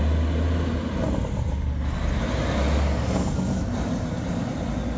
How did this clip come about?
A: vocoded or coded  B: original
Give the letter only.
B